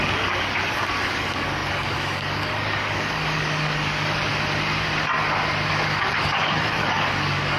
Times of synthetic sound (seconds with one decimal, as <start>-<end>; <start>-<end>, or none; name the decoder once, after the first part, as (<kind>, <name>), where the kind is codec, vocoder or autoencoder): 0.0-4.3 (codec, DAC); 5.7-7.6